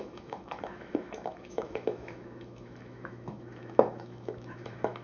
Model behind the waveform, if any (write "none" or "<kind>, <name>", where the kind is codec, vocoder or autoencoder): autoencoder, DAC-VAE